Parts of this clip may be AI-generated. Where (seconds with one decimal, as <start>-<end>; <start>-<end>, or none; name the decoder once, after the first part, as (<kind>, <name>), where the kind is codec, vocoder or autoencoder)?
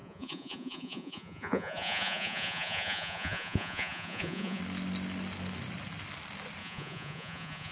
0.0-4.6 (vocoder, Vocos); 6.6-7.7